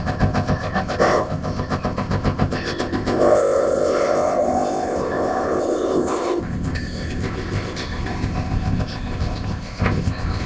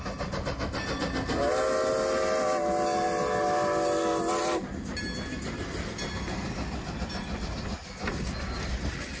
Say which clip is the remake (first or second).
first